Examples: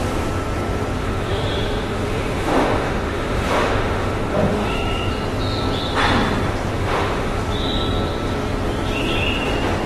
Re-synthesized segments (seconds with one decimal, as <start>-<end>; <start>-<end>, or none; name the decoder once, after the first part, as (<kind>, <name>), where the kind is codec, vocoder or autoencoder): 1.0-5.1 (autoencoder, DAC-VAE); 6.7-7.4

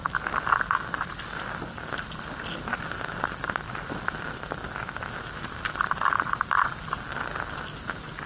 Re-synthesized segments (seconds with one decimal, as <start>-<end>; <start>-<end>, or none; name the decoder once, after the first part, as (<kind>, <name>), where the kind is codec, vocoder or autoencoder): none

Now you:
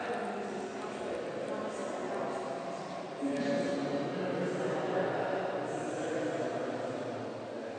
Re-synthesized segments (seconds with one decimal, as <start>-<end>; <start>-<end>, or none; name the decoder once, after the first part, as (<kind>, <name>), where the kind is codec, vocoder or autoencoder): none

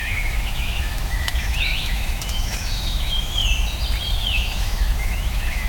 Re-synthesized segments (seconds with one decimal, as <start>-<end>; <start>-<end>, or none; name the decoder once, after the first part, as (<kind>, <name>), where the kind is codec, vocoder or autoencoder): 0.0-3.4 (autoencoder, DAC-VAE); 4.2-5.7

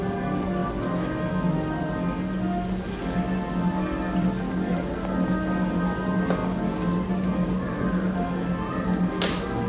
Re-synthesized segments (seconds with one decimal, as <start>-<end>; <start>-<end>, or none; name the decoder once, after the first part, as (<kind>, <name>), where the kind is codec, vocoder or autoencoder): none

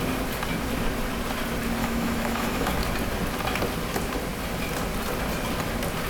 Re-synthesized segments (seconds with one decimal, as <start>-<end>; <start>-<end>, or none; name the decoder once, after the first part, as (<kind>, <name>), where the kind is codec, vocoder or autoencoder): 1.8-2.7 (autoencoder, DAC-VAE)

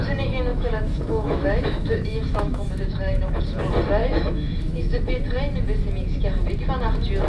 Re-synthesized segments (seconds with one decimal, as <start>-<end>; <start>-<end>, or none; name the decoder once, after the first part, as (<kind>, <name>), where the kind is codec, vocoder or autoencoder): 0.5-3.4 (autoencoder, DAC-VAE); 4.0-5.0

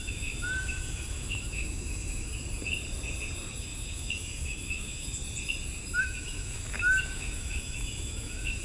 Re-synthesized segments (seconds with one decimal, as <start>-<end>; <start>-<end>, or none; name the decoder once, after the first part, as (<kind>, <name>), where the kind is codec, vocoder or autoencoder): 0.0-2.3 (autoencoder, DAC-VAE); 3.6-5.2; 6.0-8.6